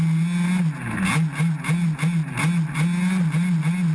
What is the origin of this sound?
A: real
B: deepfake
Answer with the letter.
A